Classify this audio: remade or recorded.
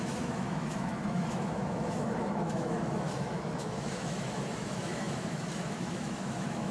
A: remade